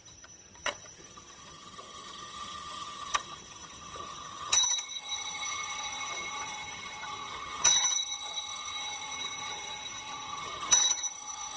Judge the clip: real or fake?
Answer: fake